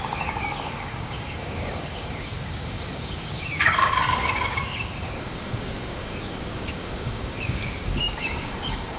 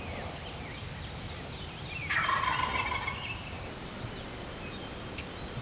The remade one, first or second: first